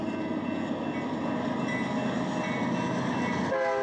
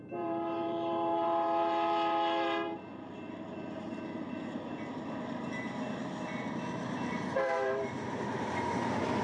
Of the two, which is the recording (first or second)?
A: first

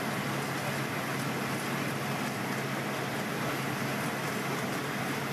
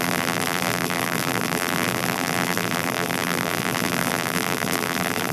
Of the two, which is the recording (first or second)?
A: first